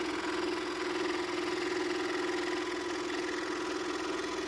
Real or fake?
fake